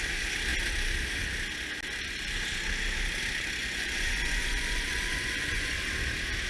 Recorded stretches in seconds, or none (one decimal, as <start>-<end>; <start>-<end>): 0.0-3.6; 5.8-6.5

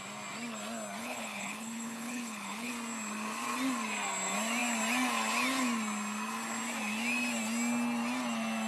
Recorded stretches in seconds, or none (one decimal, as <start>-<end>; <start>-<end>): 0.0-1.0; 2.7-8.7

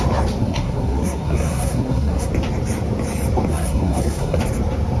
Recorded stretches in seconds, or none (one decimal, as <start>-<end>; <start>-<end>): 0.0-0.4; 2.3-3.5; 4.4-5.0

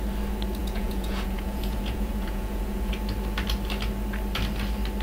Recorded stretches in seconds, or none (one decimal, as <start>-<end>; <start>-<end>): 0.0-0.6; 2.9-5.0

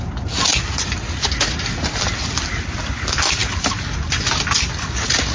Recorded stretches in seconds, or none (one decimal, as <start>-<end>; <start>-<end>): 0.0-5.3